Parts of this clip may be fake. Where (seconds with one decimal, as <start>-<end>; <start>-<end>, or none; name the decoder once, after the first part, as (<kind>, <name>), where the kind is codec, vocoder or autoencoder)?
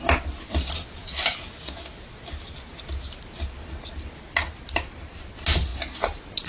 none